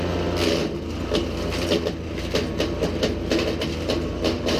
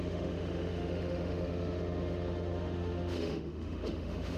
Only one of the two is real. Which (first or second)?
first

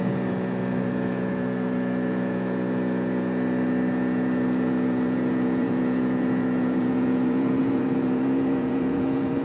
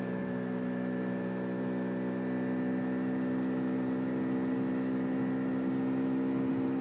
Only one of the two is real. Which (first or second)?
second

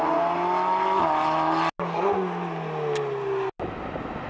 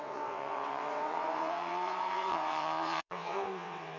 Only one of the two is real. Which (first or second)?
first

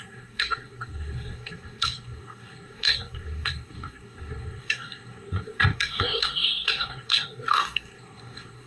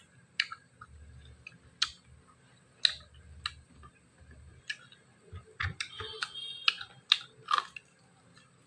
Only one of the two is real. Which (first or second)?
second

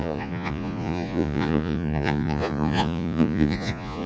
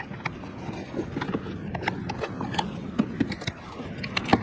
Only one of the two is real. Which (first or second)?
second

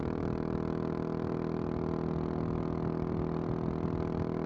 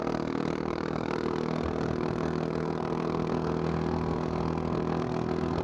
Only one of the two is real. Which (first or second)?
first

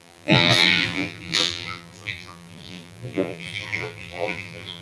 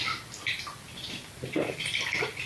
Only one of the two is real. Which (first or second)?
second